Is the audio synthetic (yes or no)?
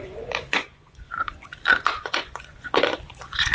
yes